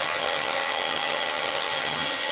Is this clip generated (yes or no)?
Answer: yes